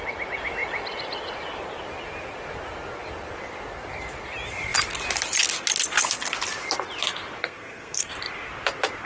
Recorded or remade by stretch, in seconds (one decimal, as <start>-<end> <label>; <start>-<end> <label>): 0.0-7.4 recorded; 7.4-8.1 remade; 8.1-9.0 recorded